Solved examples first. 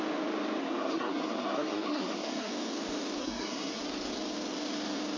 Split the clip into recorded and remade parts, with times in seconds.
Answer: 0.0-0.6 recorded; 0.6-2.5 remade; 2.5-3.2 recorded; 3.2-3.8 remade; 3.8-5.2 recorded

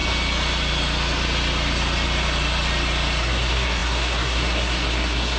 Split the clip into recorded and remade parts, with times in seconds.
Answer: 0.0-3.2 recorded; 3.2-5.4 remade